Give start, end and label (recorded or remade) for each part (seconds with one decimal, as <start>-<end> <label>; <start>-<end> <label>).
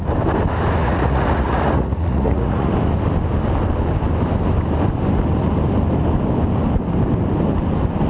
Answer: 0.0-0.8 recorded; 0.8-2.7 remade; 2.7-8.1 recorded